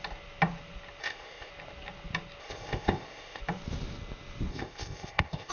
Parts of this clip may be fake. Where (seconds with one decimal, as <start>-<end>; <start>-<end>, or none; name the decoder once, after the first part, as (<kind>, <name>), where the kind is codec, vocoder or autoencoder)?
1.0-1.5 (codec, ZipCodec); 2.4-3.4; 4.5-5.5